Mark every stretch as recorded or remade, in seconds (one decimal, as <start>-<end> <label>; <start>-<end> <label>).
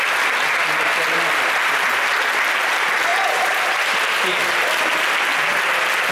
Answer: 0.0-3.1 recorded; 3.1-4.4 remade; 4.4-6.1 recorded